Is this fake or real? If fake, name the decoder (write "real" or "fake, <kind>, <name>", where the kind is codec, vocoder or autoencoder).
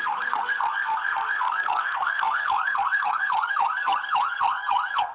fake, codec, SNAC